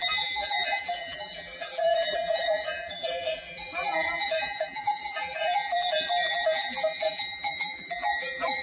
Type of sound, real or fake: fake